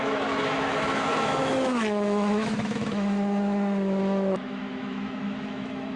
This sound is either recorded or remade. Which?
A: remade